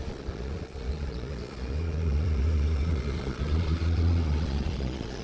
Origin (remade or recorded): remade